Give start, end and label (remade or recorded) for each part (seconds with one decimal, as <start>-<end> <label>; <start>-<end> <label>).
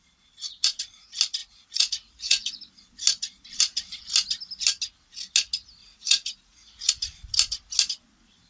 0.0-1.4 recorded; 1.4-2.6 remade; 2.6-5.8 recorded; 5.8-6.9 remade; 6.9-8.5 recorded